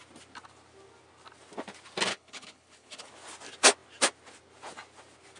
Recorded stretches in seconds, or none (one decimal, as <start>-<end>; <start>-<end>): 0.0-2.1; 3.1-5.4